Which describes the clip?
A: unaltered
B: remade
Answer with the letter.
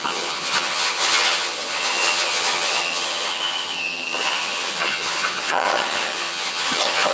B